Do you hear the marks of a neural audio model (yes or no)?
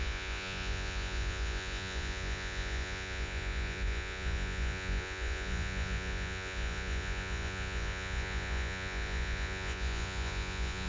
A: yes